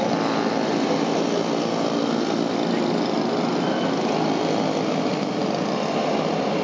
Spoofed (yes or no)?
no